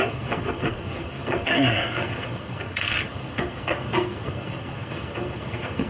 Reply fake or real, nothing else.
fake